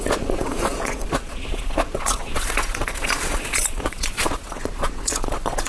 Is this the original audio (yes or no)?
no